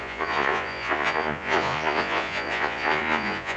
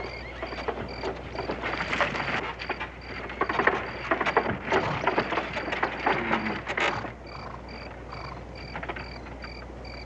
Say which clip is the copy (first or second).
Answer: first